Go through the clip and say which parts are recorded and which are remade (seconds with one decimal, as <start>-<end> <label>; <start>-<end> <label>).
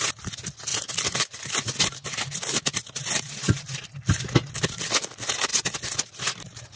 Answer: 0.0-6.8 recorded